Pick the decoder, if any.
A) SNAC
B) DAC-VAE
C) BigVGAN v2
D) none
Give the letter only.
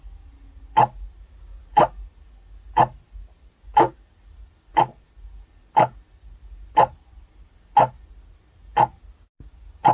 D